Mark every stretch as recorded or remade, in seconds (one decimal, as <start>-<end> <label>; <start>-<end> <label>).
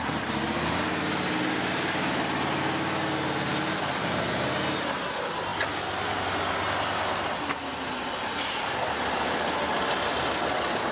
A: 0.0-10.9 recorded